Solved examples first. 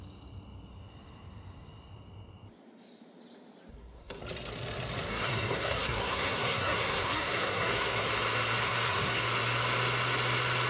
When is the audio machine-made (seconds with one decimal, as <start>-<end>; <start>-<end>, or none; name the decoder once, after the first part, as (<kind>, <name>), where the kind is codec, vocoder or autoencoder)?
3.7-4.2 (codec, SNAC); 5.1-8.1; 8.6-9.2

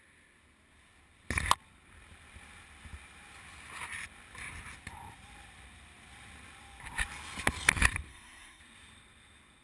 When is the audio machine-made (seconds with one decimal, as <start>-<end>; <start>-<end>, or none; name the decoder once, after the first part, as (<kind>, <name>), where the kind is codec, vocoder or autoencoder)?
8.1-8.6 (codec, SNAC)

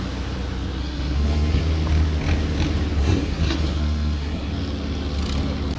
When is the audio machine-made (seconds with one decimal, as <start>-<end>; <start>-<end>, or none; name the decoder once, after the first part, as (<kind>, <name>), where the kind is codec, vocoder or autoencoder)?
0.8-1.6 (codec, SNAC); 3.0-4.5

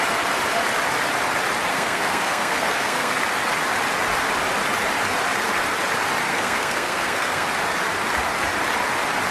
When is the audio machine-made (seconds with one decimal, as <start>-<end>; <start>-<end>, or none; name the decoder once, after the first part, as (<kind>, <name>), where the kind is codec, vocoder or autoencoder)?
1.7-3.2 (codec, SNAC); 6.3-7.5

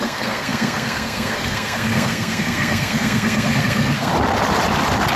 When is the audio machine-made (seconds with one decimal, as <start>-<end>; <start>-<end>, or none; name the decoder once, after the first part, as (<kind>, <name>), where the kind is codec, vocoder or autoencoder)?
0.0-4.1 (codec, SNAC)

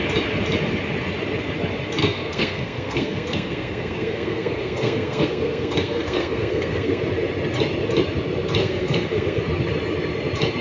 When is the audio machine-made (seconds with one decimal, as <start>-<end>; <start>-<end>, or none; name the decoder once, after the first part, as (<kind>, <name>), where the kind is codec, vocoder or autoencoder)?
2.0-7.0 (codec, SNAC); 8.6-9.4